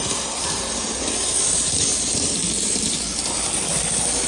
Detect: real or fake fake